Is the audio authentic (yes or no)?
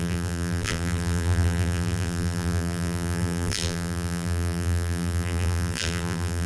no